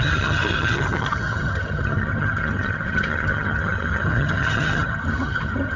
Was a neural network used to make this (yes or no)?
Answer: yes